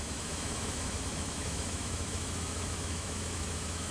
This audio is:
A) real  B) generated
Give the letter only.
B